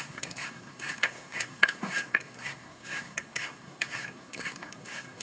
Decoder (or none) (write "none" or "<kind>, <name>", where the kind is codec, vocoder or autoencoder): codec, SNAC